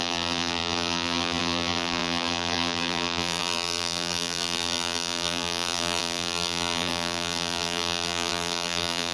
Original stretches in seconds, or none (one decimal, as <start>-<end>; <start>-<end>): none